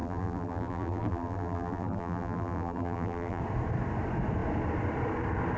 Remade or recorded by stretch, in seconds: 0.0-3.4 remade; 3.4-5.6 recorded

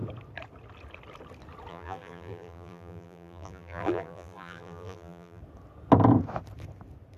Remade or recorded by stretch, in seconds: 0.0-1.7 recorded; 1.7-5.4 remade; 5.4-7.2 recorded

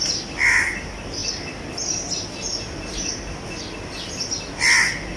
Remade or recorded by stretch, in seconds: 0.0-5.2 recorded

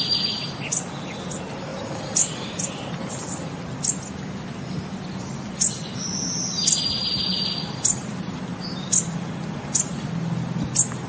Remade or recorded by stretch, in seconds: 0.0-1.7 recorded; 1.7-3.1 remade; 3.1-6.4 recorded; 6.4-8.4 remade; 8.4-11.1 recorded

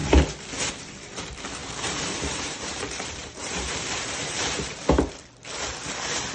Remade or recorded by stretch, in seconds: 0.0-1.6 recorded; 1.6-5.1 remade; 5.1-6.3 recorded

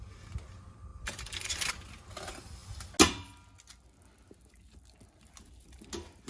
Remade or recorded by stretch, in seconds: 0.0-0.9 recorded; 0.9-1.7 remade; 1.7-6.3 recorded

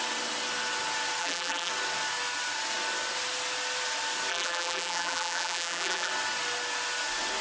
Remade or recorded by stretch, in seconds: 0.0-1.2 recorded; 1.2-1.7 remade; 1.7-4.3 recorded; 4.3-6.1 remade; 6.1-7.4 recorded